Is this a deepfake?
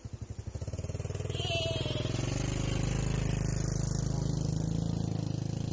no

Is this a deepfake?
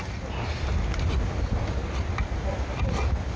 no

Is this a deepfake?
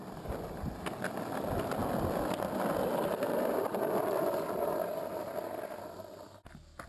no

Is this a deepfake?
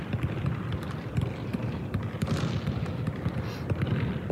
yes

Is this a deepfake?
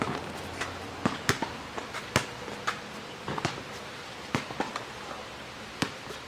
no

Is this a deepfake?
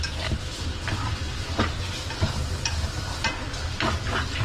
no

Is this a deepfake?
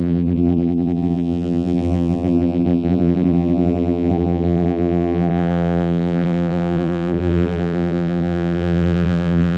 yes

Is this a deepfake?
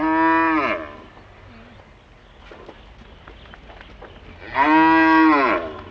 no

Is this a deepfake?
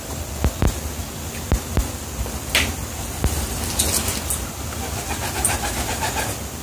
no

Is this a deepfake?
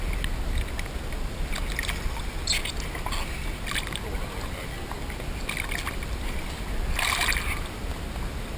no